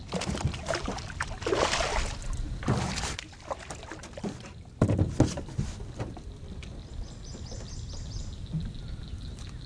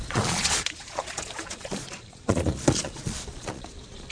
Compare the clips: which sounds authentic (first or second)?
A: first